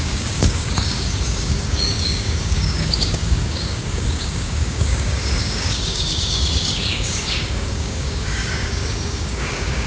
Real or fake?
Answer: fake